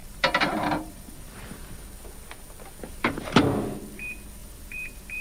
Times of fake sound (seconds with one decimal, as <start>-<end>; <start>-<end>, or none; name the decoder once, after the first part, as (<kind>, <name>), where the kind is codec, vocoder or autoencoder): 0.0-1.8 (vocoder, BigVGAN v2); 2.8-3.4; 4.4-5.2